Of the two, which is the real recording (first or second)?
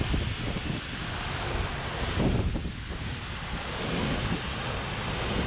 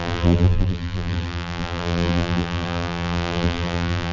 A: first